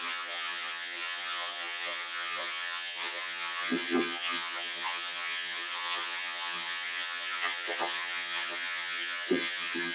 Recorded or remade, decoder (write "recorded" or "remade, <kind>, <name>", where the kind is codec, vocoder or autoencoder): remade, vocoder, HiFi-GAN